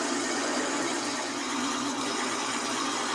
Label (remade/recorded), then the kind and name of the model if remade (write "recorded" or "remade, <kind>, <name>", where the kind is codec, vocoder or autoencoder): remade, vocoder, Vocos